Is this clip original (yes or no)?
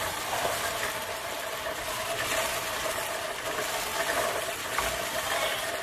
yes